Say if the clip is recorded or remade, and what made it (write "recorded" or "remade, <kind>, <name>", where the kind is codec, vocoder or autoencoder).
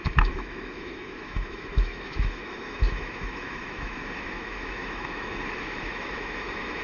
remade, autoencoder, DAC-VAE